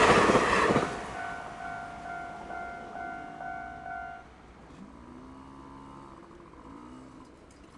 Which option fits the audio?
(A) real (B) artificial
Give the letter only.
A